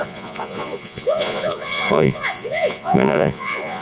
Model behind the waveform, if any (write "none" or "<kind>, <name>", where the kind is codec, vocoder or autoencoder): vocoder, Vocos